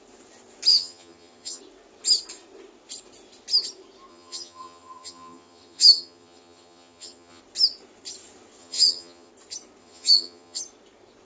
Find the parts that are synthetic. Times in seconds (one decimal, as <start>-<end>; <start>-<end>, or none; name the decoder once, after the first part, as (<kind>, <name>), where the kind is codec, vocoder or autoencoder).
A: 0.7-1.6 (vocoder, HiFi-GAN); 4.1-7.4; 8.6-9.3; 9.8-10.6